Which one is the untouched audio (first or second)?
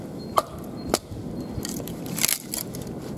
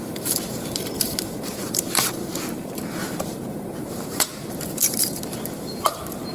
first